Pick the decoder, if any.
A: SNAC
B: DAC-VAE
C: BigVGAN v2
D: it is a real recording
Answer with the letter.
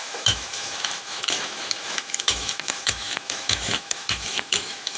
B